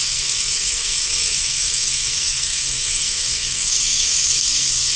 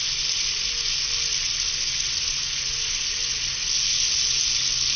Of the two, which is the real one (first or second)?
second